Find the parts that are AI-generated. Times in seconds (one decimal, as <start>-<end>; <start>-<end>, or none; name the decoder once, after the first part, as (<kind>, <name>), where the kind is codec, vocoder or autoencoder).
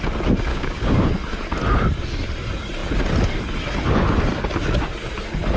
0.5-1.0 (codec, DAC)